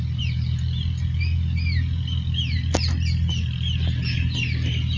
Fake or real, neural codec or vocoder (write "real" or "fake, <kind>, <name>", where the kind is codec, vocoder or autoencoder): real